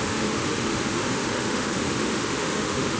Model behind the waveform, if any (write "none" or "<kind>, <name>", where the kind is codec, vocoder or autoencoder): autoencoder, DAC-VAE